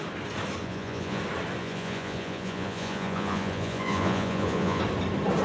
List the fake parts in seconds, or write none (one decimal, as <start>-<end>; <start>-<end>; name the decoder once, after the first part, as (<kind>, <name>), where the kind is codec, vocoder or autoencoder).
0.6-1.2 (vocoder, Vocos); 1.6-4.8